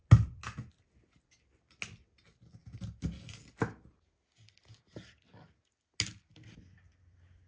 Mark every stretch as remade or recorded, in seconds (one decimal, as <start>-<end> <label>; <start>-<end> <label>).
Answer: 0.0-7.5 recorded